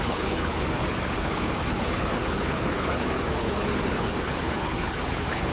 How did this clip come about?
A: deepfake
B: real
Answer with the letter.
A